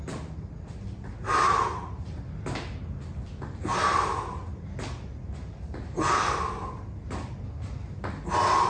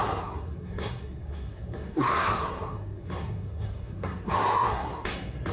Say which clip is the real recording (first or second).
first